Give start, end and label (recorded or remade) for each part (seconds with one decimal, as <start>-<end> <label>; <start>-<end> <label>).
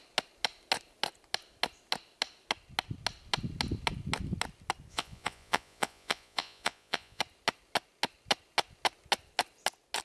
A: 0.0-4.9 recorded; 4.9-7.2 remade; 7.2-10.0 recorded